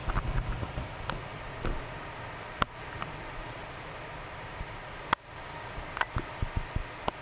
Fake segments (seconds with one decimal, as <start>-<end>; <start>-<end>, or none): none